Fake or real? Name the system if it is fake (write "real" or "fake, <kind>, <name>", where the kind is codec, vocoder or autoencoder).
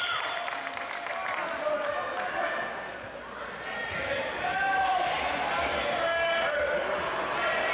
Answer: real